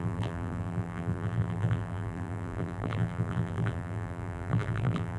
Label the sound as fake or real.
fake